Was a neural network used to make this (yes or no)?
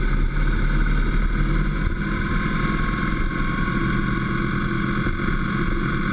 no